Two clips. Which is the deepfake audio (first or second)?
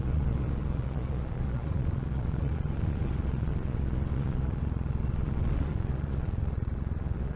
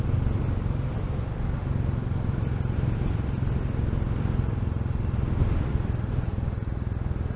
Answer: first